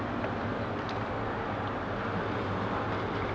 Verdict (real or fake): real